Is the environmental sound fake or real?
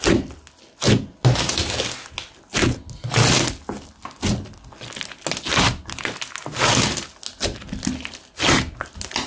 real